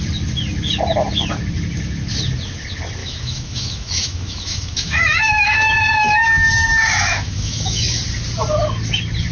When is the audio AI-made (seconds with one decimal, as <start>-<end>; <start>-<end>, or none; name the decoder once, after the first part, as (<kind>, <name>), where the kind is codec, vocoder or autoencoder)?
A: 3.0-8.0 (autoencoder, DAC-VAE)